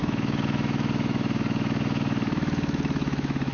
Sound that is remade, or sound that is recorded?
remade